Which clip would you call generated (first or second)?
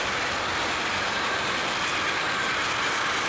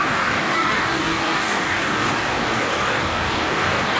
second